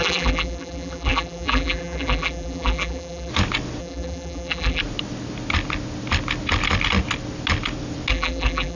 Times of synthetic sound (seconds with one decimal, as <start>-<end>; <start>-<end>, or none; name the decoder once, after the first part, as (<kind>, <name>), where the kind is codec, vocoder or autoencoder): 0.0-3.3 (vocoder, BigVGAN v2); 3.8-4.8; 8.1-8.7

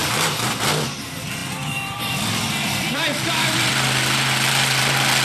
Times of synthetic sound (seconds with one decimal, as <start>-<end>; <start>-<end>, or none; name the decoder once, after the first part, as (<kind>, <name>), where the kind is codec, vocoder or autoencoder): 0.0-0.8 (vocoder, BigVGAN v2); 1.4-3.7

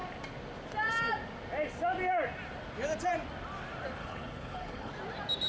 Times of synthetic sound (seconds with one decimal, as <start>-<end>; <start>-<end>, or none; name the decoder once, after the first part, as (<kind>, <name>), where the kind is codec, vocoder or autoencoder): 4.0-4.9 (codec, HILCodec)